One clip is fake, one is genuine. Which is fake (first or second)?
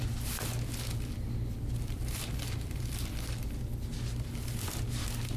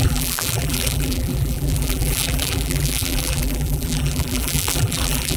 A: second